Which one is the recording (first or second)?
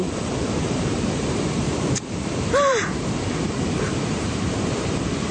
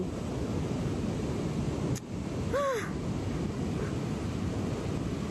second